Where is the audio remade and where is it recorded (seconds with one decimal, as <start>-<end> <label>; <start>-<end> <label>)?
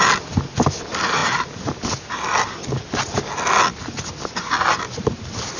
0.0-5.6 recorded